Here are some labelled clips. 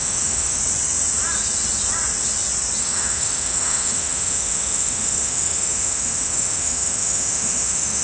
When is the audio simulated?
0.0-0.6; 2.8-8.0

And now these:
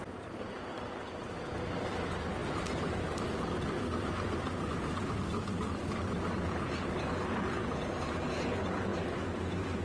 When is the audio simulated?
none

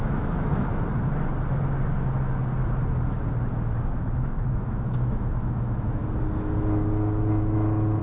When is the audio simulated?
0.0-0.7; 3.9-6.0

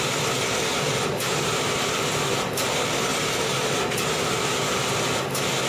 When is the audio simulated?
none